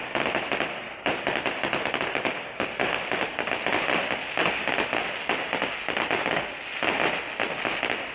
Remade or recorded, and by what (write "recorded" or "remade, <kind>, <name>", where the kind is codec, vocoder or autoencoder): recorded